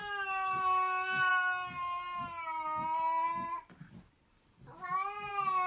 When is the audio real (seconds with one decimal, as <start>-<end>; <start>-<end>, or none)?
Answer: 1.3-5.7